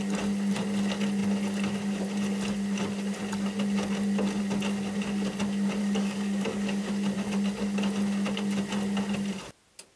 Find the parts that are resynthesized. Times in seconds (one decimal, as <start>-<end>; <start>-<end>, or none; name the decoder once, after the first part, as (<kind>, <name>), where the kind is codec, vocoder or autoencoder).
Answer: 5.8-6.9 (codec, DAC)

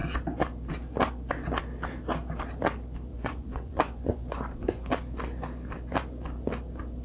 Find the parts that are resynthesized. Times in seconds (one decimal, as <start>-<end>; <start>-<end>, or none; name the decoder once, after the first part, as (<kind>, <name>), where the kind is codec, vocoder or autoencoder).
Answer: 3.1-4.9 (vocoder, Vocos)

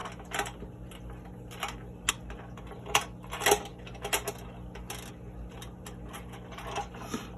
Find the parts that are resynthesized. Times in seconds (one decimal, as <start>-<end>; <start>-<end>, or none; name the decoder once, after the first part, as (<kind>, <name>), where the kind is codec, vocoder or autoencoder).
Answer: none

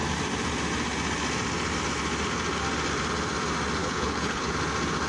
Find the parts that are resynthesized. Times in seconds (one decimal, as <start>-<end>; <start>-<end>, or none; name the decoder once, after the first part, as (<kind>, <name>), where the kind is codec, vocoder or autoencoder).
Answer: 3.8-4.5 (codec, HILCodec)

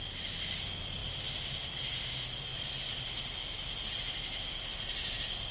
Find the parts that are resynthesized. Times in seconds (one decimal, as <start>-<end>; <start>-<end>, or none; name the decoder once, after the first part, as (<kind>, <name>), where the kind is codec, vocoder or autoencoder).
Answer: none

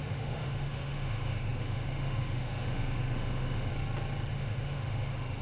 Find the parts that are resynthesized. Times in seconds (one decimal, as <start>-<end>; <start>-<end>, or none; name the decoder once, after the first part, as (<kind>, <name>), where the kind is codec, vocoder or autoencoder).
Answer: 0.0-3.7 (autoencoder, DAC-VAE); 4.3-5.4